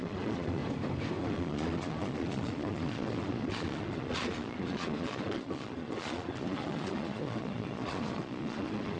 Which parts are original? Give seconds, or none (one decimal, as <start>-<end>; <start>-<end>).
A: 0.6-1.2